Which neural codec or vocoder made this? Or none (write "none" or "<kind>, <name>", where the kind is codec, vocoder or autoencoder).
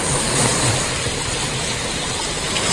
none